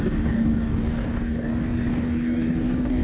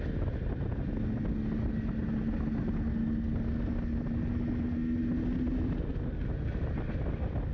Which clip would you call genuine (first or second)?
second